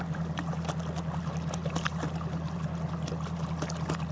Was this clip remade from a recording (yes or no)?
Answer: no